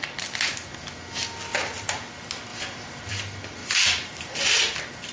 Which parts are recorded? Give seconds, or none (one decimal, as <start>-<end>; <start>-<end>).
0.0-1.5; 2.1-2.5; 3.1-3.6; 4.3-5.1